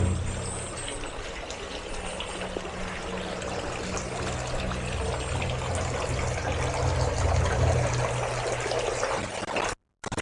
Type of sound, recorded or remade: recorded